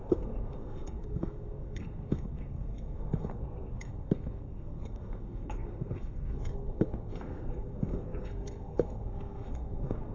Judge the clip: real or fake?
fake